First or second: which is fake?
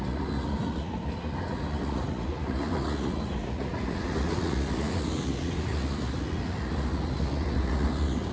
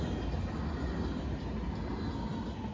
first